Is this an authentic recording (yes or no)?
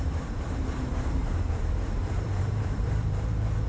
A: no